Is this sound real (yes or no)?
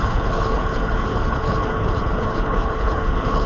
no